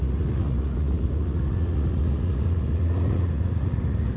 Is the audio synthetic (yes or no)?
yes